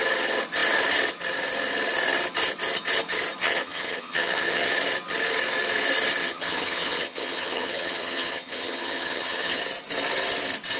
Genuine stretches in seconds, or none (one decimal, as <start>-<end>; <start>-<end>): 0.0-3.4; 4.7-6.2; 9.6-10.8

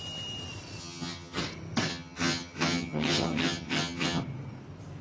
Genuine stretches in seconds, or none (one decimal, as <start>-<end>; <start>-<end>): 0.0-0.8; 1.4-1.9; 4.2-5.0

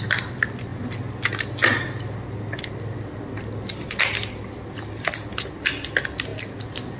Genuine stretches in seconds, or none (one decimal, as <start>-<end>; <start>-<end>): 0.0-7.0

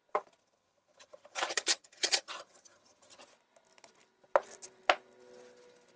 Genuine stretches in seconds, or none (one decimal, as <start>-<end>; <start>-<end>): 0.0-0.4; 3.2-6.0

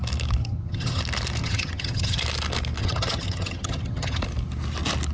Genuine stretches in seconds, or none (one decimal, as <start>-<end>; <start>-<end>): 0.0-0.4; 1.0-1.4; 2.2-2.8; 4.2-5.1

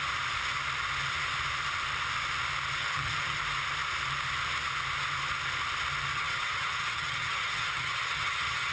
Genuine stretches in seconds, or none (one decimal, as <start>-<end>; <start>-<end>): 0.0-2.8; 3.4-6.1

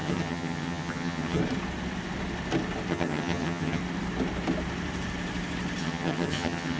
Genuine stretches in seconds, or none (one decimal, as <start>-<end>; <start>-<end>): 1.4-2.9; 3.8-5.8

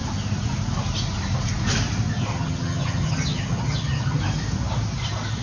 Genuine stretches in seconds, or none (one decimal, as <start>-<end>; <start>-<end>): 0.0-2.3; 4.2-5.4